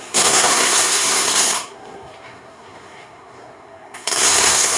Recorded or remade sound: remade